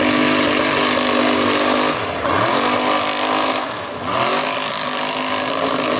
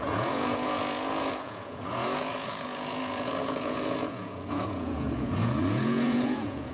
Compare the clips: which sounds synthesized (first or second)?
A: second